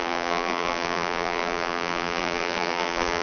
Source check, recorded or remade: remade